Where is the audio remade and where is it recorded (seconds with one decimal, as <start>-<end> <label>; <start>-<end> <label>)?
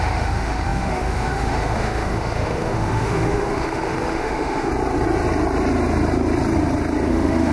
0.0-4.7 remade; 4.7-7.1 recorded; 7.1-7.5 remade